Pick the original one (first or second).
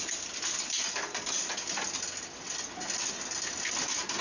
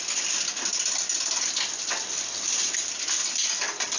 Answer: first